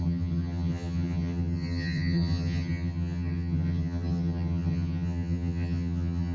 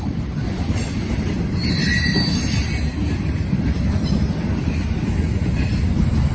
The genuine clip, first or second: second